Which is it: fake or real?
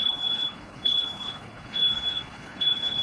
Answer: fake